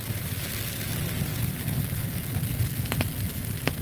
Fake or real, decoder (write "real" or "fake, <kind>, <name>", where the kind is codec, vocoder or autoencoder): real